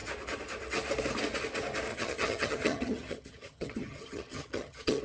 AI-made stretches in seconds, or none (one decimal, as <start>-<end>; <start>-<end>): 1.9-5.0